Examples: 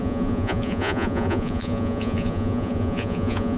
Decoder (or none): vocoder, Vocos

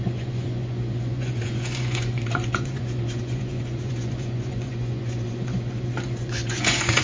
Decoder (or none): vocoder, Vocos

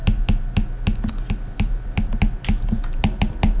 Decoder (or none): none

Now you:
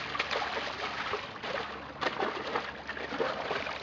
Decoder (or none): none